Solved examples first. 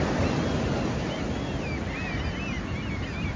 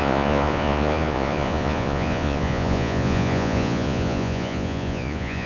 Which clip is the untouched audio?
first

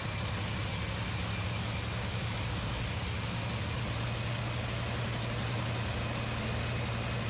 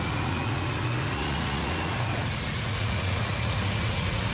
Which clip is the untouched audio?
first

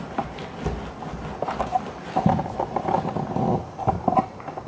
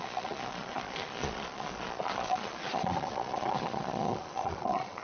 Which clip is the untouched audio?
first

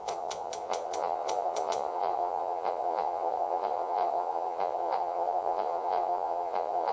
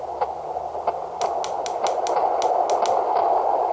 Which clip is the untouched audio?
second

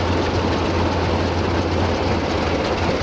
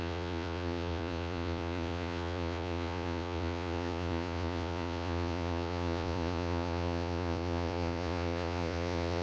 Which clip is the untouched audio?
first